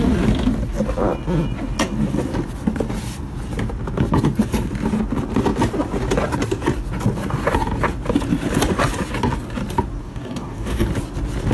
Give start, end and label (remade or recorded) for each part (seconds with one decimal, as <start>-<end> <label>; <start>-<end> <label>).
0.0-10.0 recorded; 10.0-10.9 remade; 10.9-11.5 recorded